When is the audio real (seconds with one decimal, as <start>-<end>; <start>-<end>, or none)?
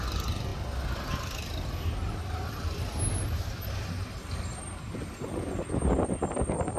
0.0-6.8